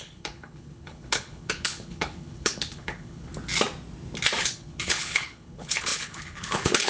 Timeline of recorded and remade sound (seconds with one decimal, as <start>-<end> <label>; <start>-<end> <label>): 0.0-3.3 remade; 3.3-4.4 recorded; 4.4-6.9 remade